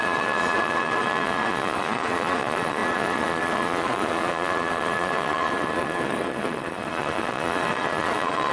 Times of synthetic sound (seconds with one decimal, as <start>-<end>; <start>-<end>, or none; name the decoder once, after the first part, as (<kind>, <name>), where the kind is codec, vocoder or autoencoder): 0.0-8.5 (vocoder, Vocos)